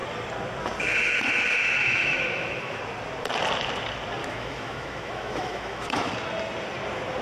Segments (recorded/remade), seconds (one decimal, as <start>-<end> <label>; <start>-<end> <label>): 0.0-1.8 recorded; 1.8-2.8 remade; 2.8-4.2 recorded; 4.2-6.1 remade; 6.1-7.2 recorded